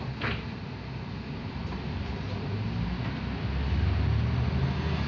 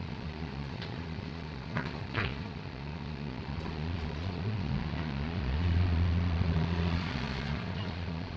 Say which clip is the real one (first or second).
first